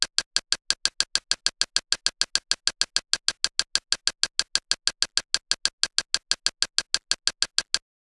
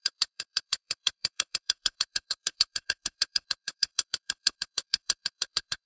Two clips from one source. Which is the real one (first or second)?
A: first